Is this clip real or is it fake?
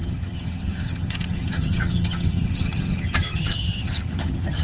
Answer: fake